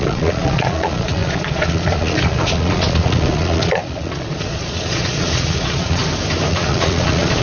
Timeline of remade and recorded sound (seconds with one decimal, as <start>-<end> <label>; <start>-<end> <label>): 0.0-6.0 remade; 6.0-6.5 recorded; 6.5-7.4 remade